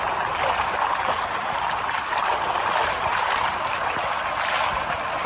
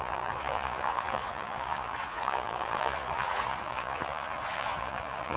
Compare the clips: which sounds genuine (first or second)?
first